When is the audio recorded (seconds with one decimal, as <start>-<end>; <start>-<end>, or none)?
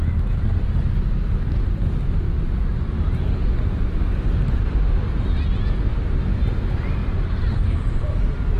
0.0-2.7; 4.7-7.0; 8.1-8.6